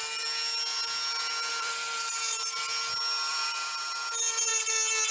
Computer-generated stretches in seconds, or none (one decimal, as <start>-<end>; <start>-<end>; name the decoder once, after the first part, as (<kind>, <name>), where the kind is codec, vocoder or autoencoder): 1.5-2.6 (vocoder, BigVGAN v2); 3.3-4.0